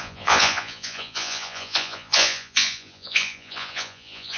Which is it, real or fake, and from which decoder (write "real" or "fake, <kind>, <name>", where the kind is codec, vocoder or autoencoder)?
fake, vocoder, Vocos